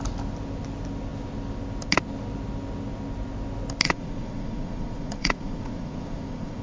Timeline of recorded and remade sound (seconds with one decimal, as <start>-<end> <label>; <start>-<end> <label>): 0.0-3.8 recorded; 3.8-6.6 remade